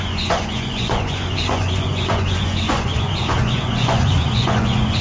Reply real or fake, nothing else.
fake